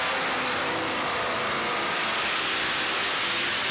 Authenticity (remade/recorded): recorded